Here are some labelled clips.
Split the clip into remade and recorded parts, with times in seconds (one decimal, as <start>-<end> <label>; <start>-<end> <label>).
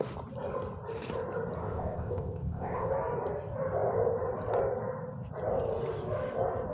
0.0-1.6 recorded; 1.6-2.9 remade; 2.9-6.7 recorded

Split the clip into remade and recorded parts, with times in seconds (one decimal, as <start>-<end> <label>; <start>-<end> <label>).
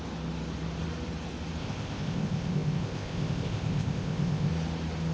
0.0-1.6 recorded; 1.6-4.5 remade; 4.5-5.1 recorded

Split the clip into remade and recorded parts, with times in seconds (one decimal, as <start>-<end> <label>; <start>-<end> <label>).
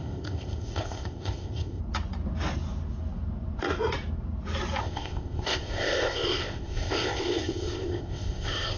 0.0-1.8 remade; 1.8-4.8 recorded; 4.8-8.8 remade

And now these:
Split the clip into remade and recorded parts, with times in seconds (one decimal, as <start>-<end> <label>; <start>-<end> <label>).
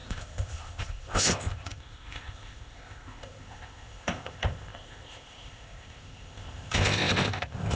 0.0-7.8 remade